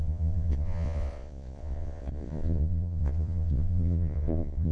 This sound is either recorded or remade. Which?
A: remade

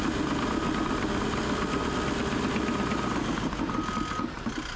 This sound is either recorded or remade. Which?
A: recorded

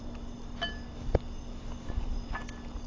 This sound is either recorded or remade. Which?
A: recorded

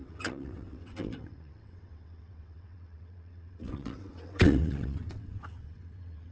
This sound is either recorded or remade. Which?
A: remade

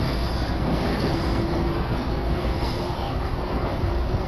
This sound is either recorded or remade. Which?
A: remade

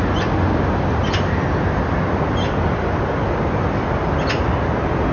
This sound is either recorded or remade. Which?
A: recorded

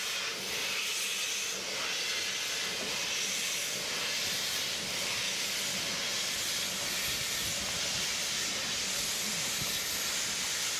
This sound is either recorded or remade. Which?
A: recorded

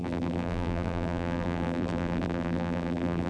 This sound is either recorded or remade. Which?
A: remade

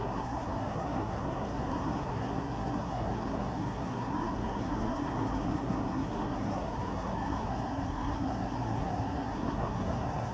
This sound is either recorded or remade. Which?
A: remade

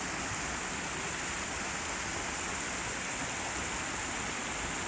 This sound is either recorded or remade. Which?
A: recorded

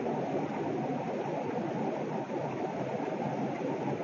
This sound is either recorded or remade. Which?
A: recorded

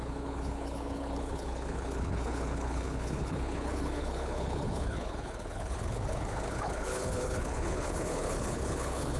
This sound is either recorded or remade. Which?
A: remade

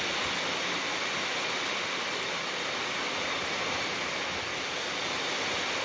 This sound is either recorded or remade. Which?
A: recorded